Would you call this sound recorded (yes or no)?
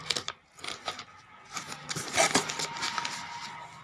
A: yes